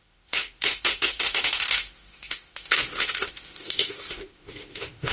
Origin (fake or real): fake